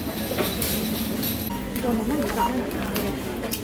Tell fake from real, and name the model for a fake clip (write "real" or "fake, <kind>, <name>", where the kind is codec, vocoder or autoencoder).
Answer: real